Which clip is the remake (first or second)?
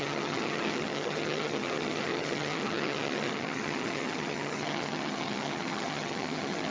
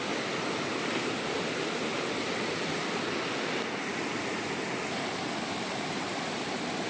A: first